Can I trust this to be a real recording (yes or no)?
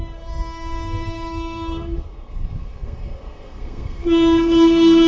no